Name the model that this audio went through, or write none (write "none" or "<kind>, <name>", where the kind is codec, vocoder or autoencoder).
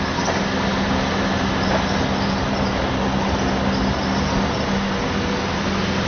none